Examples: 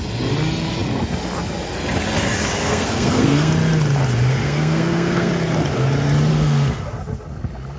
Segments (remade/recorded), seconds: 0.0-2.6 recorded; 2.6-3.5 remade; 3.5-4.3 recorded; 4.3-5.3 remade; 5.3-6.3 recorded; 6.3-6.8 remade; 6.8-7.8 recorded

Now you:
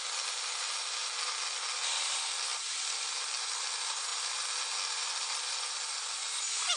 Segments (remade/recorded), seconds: 0.0-6.8 recorded

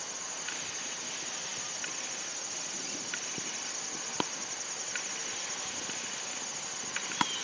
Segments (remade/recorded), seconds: 0.0-7.4 recorded

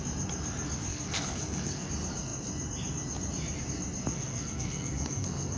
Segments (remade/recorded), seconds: 0.0-0.9 recorded; 0.9-1.9 remade; 1.9-4.1 recorded; 4.1-5.6 remade

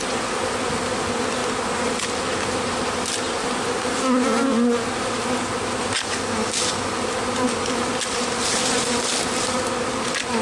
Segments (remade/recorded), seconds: 0.0-10.4 recorded